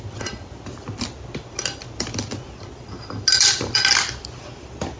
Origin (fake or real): real